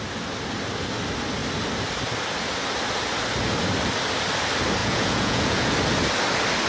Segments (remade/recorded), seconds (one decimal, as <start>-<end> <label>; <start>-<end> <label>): 0.0-4.8 recorded; 4.8-5.7 remade; 5.7-6.7 recorded